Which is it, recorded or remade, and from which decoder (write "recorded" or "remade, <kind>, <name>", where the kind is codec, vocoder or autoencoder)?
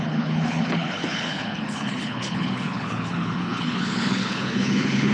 remade, codec, HILCodec